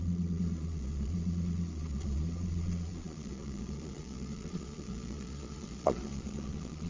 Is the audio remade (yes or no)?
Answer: yes